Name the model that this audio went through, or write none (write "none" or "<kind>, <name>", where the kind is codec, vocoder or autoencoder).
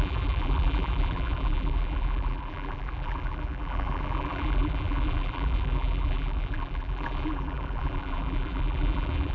vocoder, BigVGAN v2